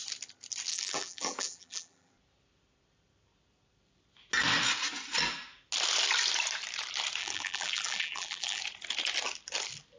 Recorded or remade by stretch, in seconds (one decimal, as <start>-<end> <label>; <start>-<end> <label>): 0.0-0.7 recorded; 0.7-2.1 remade; 2.1-7.2 recorded; 7.2-8.6 remade; 8.6-10.0 recorded